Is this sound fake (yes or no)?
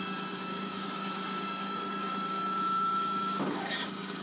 yes